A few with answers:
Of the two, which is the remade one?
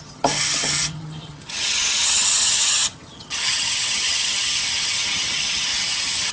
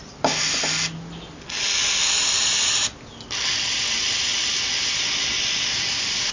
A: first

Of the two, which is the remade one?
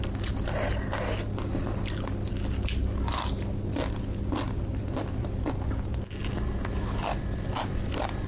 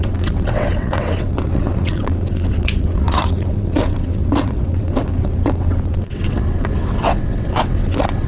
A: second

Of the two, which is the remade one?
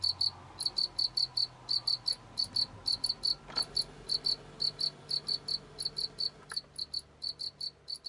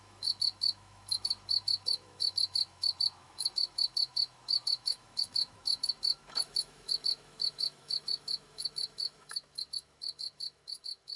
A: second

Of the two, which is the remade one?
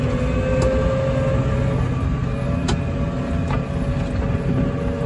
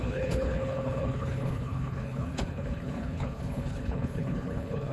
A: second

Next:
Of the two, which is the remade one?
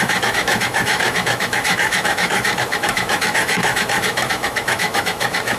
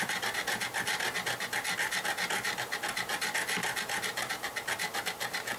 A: first